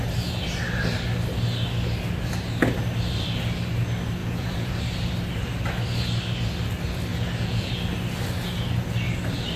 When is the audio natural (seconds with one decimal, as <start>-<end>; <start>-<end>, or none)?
0.0-4.2; 4.8-7.1; 7.7-9.6